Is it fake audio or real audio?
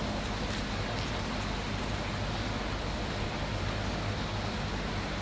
real